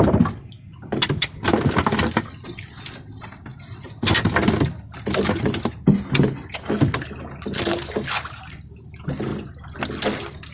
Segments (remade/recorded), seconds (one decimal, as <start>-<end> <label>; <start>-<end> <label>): 0.0-0.7 recorded; 0.7-2.7 remade; 2.7-3.5 recorded; 3.5-4.5 remade; 4.5-9.3 recorded; 9.3-9.8 remade; 9.8-10.5 recorded